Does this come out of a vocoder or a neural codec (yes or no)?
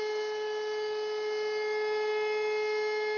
no